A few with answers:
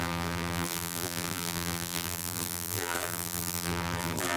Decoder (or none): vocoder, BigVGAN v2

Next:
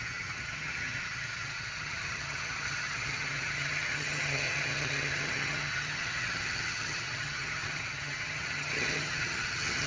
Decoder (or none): vocoder, HiFi-GAN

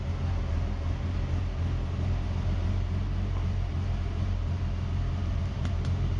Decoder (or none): none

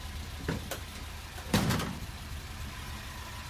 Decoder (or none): vocoder, BigVGAN v2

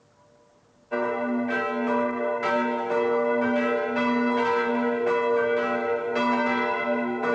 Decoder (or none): none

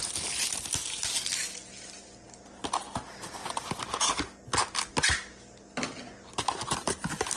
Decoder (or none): none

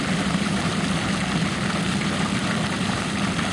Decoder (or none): none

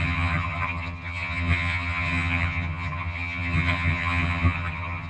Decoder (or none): vocoder, HiFi-GAN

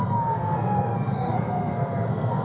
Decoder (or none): codec, SNAC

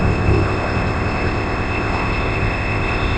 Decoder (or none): codec, ZipCodec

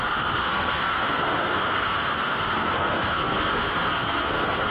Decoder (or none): codec, SNAC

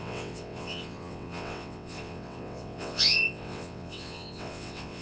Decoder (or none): vocoder, WaveNeXt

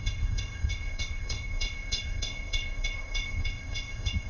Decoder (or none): codec, ZipCodec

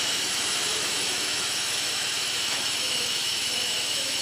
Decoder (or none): autoencoder, DAC-VAE